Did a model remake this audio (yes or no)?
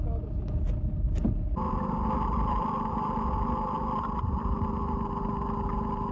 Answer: no